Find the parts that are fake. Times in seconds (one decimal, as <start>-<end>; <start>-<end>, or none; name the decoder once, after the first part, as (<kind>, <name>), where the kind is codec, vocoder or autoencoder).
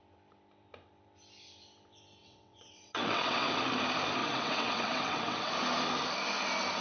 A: 2.2-3.6 (vocoder, WaveNeXt); 4.2-5.5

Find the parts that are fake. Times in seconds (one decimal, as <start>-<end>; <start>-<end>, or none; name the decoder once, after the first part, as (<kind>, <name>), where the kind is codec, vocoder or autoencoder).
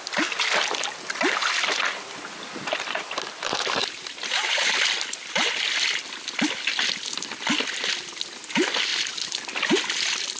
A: none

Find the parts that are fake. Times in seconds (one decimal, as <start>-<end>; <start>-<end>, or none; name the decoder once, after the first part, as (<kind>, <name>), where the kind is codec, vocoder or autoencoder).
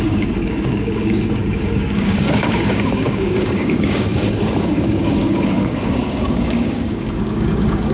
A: 0.0-7.9 (codec, DAC)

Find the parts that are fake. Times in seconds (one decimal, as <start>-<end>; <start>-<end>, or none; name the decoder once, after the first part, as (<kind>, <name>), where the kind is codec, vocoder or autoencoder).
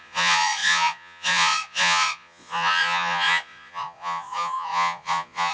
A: 0.0-5.5 (vocoder, Vocos)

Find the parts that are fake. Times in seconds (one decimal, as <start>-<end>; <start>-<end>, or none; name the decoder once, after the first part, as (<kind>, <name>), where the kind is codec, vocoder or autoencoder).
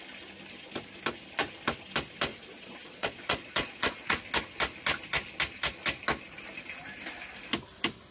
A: 2.3-4.2 (vocoder, Vocos)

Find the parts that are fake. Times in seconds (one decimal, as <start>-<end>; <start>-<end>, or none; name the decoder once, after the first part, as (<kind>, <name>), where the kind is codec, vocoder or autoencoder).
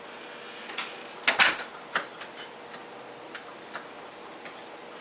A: none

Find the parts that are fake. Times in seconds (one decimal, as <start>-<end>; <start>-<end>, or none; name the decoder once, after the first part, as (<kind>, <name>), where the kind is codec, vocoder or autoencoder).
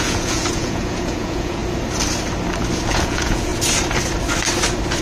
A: 0.0-1.6 (vocoder, Vocos); 2.9-3.5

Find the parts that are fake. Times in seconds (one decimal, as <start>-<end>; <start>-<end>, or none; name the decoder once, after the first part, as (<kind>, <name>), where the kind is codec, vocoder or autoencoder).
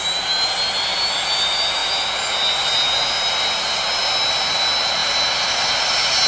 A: none